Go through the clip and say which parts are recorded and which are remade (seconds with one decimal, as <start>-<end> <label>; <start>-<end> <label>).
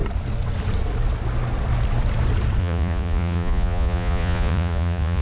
0.0-2.6 recorded; 2.6-5.2 remade